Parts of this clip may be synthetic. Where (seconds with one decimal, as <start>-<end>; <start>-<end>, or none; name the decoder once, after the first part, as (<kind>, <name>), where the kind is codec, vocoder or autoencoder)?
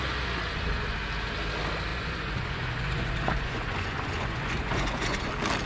1.9-5.3 (vocoder, Vocos)